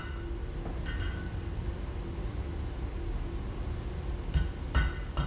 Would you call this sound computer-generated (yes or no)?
no